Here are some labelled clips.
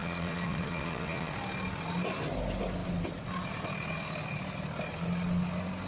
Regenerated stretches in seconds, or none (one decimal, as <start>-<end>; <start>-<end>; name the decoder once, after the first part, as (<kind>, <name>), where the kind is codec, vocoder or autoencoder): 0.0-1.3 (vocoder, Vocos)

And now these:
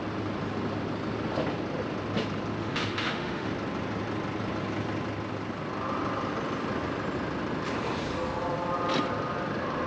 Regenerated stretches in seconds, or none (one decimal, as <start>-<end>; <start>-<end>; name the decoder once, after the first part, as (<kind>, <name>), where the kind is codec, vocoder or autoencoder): 2.6-3.5 (autoencoder, DAC-VAE)

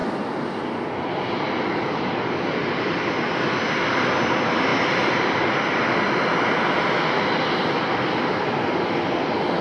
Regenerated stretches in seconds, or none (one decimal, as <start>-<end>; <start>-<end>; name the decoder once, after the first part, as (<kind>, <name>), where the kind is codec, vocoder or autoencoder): none